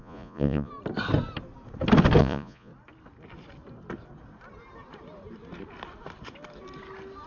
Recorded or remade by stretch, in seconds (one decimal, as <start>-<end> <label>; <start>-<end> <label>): 0.0-0.7 remade; 0.7-2.2 recorded; 2.2-2.7 remade; 2.7-7.3 recorded